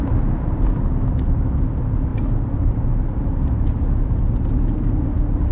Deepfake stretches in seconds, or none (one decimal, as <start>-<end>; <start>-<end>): none